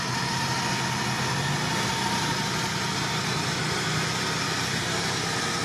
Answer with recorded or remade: recorded